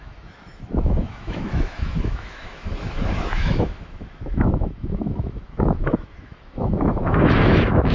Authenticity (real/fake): fake